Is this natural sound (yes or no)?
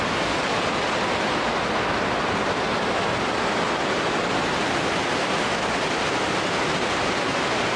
yes